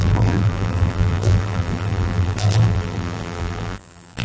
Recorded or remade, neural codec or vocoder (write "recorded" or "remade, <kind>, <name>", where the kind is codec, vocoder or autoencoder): remade, vocoder, BigVGAN v2